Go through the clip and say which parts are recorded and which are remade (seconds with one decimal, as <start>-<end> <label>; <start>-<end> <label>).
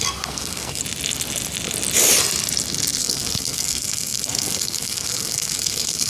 0.0-0.8 remade; 0.8-3.0 recorded; 3.0-6.1 remade